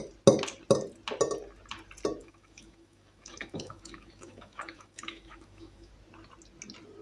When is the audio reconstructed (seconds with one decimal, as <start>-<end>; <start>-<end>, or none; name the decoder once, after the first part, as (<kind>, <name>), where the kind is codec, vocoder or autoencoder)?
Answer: 2.2-5.9 (autoencoder, DAC-VAE)